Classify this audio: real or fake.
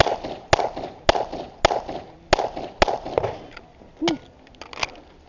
real